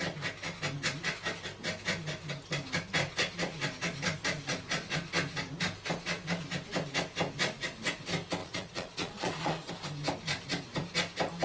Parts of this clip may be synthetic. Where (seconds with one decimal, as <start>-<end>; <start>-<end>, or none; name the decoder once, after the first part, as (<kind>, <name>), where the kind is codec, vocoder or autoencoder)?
8.4-9.7 (vocoder, Vocos)

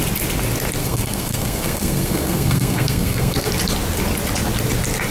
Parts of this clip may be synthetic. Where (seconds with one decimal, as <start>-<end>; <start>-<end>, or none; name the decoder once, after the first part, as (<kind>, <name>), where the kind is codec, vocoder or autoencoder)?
0.8-3.5 (codec, SNAC)

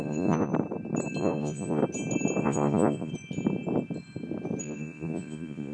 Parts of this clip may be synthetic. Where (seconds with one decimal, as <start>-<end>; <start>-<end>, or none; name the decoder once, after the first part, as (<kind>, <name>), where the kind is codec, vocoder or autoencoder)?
0.0-0.5 (vocoder, Vocos); 1.2-1.8; 2.4-3.1; 4.6-5.7

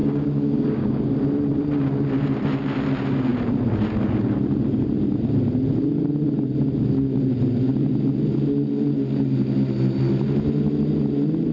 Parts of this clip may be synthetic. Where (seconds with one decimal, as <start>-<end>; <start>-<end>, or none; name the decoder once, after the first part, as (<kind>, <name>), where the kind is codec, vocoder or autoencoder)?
0.0-1.1 (codec, DAC)